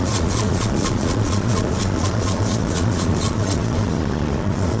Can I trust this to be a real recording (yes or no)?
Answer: no